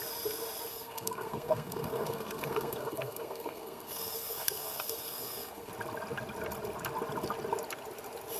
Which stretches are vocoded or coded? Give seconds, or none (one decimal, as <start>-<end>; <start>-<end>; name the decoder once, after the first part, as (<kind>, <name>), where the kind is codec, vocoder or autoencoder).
0.7-5.7 (codec, SNAC)